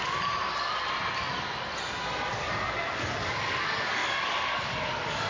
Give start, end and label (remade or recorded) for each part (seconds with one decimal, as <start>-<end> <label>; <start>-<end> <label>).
0.0-2.3 recorded; 2.3-5.3 remade